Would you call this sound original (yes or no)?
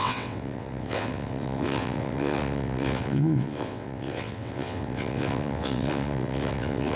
no